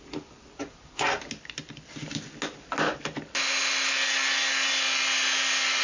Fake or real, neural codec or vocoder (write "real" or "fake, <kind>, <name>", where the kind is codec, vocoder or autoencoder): real